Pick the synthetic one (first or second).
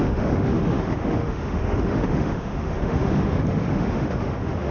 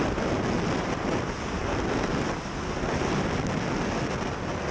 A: first